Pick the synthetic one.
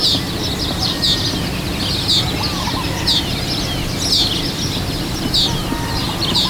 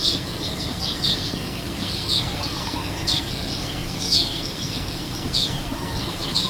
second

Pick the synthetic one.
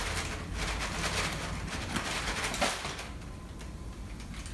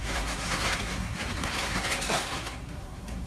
second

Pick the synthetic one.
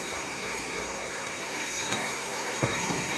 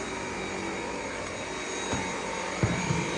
first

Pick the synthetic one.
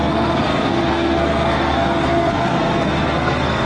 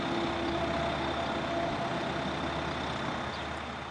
first